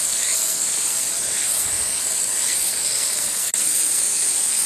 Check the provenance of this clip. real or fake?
fake